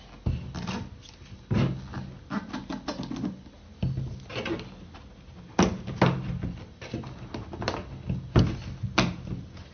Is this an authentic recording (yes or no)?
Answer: yes